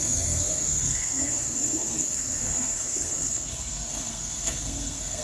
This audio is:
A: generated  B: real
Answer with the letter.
A